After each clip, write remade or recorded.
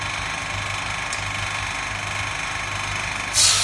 recorded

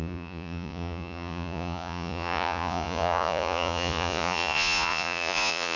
remade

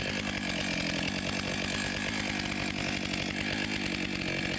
recorded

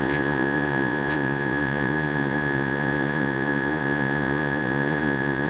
remade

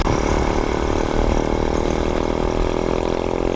recorded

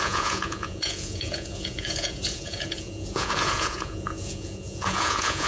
remade